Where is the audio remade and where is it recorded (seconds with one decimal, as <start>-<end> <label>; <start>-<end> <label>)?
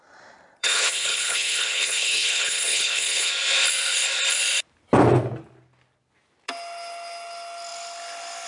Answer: 0.0-0.6 recorded; 0.6-3.3 remade; 3.3-8.5 recorded